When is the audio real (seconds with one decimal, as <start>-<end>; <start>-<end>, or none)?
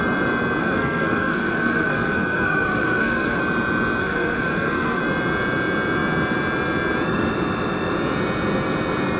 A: 0.0-0.6; 3.4-4.0; 5.0-9.2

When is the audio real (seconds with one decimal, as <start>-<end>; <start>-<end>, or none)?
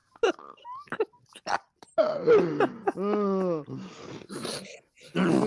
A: 0.0-5.5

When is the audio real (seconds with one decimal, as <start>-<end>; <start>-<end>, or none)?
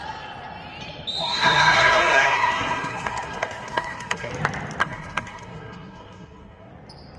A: 0.0-1.2; 4.3-4.8; 6.7-7.2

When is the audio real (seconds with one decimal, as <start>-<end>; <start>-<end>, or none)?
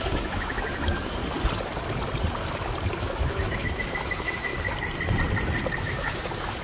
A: 1.2-3.0; 4.5-5.8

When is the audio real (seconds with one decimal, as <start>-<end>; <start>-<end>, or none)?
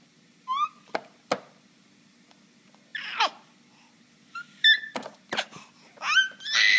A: 0.0-6.8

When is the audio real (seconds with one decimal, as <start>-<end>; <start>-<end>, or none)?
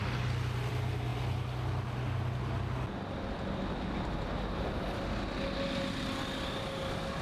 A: 0.0-7.2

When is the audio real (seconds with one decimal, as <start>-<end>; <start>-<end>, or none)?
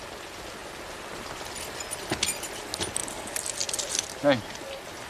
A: 0.0-5.1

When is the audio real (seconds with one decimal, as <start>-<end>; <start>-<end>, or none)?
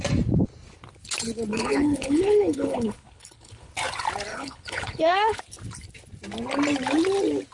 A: 0.0-1.5; 3.7-4.3; 5.4-7.5